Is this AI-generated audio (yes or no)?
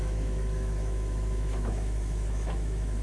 yes